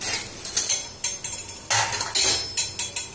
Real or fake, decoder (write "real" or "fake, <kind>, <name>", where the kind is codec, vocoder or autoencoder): real